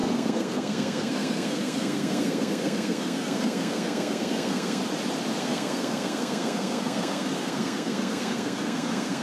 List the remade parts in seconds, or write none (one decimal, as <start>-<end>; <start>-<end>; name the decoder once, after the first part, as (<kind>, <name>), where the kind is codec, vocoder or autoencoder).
0.0-4.8 (codec, SNAC); 5.4-9.2